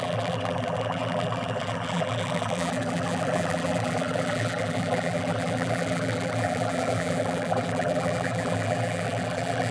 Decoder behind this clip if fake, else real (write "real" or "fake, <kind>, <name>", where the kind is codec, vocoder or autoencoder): fake, vocoder, BigVGAN v2